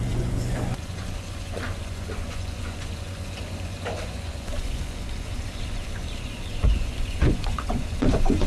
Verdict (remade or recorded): remade